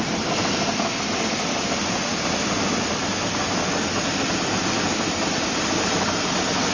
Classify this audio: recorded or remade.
recorded